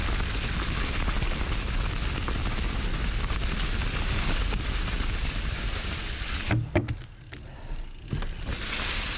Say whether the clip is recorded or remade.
recorded